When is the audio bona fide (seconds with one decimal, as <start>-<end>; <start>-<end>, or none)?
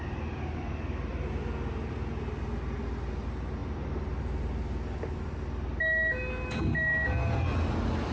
0.0-8.1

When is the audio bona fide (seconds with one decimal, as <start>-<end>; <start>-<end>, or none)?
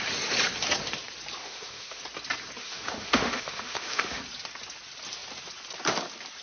0.0-1.4; 2.0-2.6; 4.2-6.4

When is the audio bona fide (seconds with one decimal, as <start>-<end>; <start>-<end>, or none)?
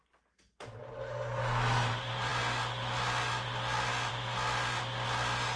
0.0-5.6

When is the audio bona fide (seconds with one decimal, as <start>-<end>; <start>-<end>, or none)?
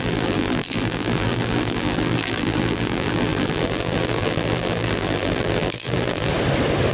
6.3-6.9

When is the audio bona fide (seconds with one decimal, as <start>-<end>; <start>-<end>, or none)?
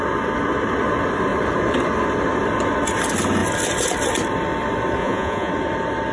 0.0-5.0; 5.5-6.1